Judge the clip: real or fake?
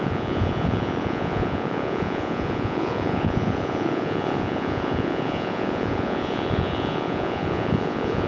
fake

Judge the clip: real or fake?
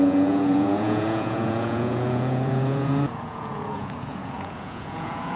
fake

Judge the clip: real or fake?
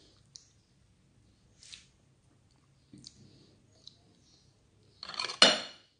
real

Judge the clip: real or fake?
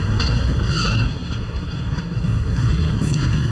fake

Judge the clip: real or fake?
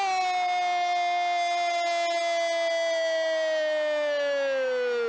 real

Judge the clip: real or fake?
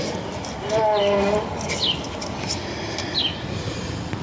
real